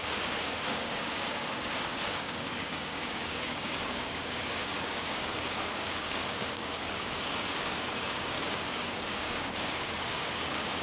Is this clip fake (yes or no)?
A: yes